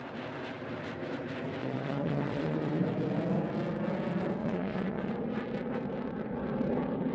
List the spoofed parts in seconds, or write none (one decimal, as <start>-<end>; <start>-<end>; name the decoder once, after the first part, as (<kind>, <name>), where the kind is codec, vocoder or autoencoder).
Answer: 1.6-2.8 (vocoder, Vocos); 4.4-5.1